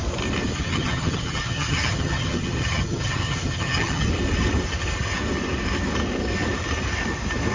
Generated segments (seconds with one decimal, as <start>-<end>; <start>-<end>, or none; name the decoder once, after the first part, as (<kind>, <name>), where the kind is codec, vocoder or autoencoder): 0.5-4.1 (vocoder, HiFi-GAN)